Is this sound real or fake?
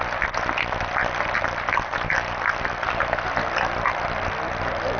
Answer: real